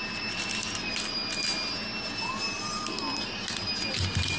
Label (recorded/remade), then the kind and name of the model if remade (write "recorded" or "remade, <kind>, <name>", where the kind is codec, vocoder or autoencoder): recorded